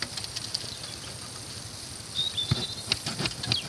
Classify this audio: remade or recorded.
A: recorded